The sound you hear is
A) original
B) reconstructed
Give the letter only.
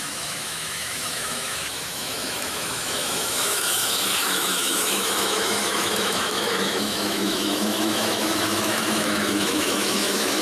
B